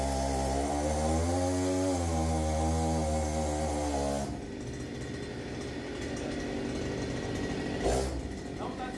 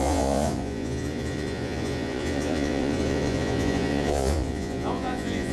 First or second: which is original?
first